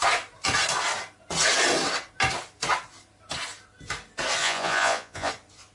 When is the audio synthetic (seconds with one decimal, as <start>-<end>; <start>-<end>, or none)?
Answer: 4.4-5.3